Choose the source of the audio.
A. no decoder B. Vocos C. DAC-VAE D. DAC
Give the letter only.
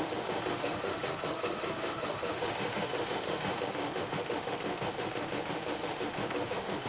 C